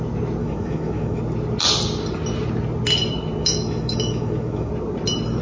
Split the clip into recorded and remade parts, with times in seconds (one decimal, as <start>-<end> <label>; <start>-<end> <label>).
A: 0.0-0.4 recorded; 0.4-1.2 remade; 1.2-3.4 recorded; 3.4-4.7 remade; 4.7-5.4 recorded